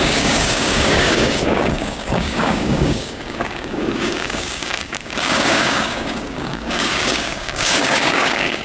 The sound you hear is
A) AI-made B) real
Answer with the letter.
A